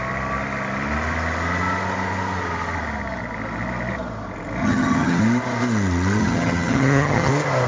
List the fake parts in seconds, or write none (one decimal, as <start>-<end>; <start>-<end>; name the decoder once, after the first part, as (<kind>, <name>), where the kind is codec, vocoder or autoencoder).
4.6-5.2 (vocoder, HiFi-GAN); 6.2-7.3